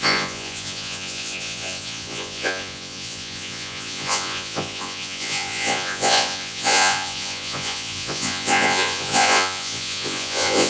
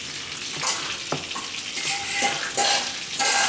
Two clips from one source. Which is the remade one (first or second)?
first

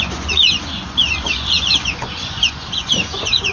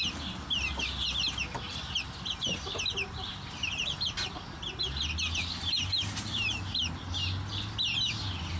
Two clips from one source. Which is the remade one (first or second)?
first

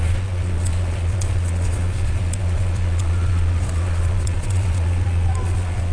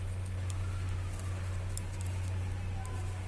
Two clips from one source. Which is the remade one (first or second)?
first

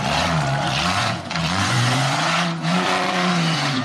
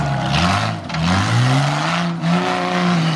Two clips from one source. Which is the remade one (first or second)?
first